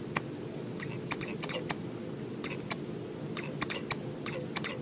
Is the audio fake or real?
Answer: real